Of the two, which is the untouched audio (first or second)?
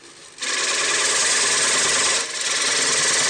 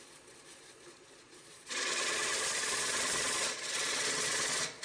first